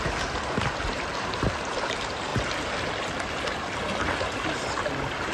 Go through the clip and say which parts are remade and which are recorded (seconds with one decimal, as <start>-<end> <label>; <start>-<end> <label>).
0.0-5.3 recorded

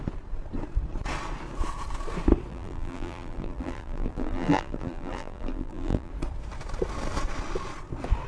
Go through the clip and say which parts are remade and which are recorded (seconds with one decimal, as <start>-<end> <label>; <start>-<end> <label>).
0.0-2.5 recorded; 2.5-6.1 remade; 6.1-8.3 recorded